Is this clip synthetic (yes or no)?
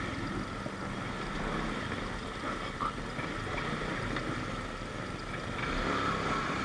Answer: no